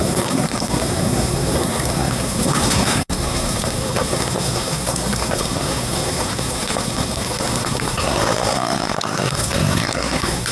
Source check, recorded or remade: remade